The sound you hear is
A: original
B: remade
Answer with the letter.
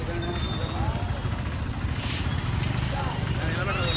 A